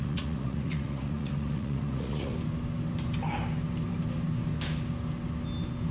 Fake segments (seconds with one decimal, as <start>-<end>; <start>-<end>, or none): 0.0-2.3